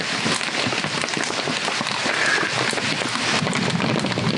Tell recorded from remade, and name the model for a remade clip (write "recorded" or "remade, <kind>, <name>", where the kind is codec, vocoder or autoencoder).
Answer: recorded